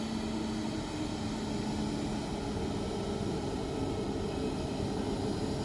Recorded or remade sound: recorded